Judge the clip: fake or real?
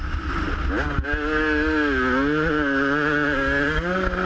real